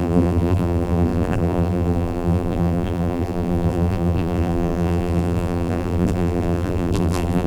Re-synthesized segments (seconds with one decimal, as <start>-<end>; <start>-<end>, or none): 0.0-7.5